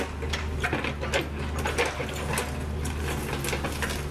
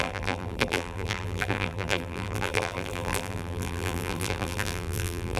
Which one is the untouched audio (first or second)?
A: first